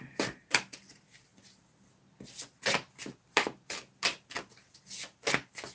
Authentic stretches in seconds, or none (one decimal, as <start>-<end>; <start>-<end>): 0.0-5.7